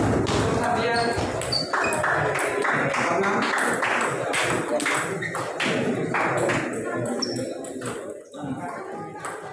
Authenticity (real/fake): real